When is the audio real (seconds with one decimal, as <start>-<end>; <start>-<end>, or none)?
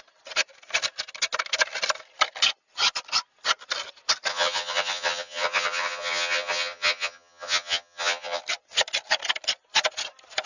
0.0-4.3; 8.4-10.5